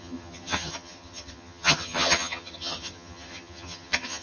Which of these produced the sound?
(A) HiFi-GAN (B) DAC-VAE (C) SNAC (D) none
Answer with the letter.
A